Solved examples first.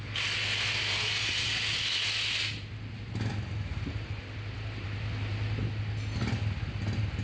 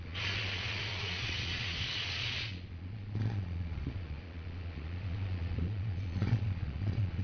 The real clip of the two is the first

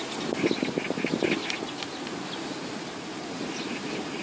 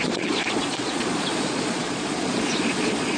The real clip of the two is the first